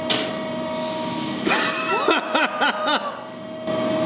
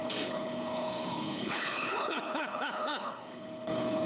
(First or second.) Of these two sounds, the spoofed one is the second